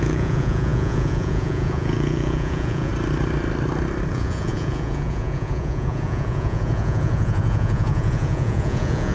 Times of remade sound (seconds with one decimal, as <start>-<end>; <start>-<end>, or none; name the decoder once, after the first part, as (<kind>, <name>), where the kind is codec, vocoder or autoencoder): 0.0-2.9 (vocoder, Vocos); 4.1-9.1